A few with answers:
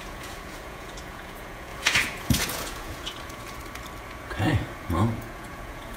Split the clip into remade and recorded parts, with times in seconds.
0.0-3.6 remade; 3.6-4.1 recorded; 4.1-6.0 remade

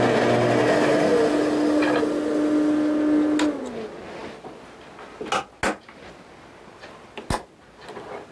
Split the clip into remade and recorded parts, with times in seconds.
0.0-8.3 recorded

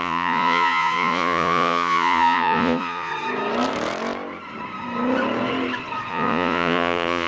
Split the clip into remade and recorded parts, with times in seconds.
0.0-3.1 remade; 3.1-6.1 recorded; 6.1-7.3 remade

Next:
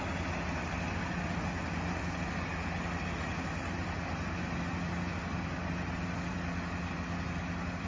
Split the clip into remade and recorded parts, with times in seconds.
0.0-7.9 recorded

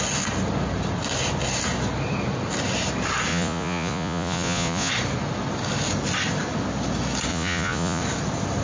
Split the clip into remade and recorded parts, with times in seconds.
0.0-3.3 recorded; 3.3-4.9 remade; 4.9-7.3 recorded; 7.3-8.0 remade; 8.0-8.6 recorded

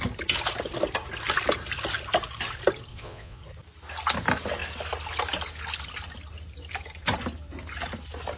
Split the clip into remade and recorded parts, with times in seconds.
0.0-2.9 recorded; 2.9-3.4 remade; 3.4-8.4 recorded